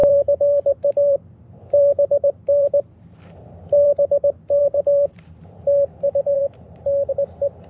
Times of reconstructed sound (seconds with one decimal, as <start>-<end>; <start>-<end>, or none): 0.0-3.9; 4.6-6.4; 7.1-7.7